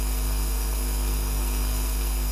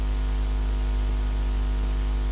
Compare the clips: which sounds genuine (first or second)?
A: second